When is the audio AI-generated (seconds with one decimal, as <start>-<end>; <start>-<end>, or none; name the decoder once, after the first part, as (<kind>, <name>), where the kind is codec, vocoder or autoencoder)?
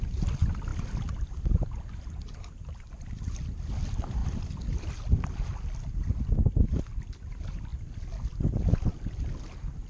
none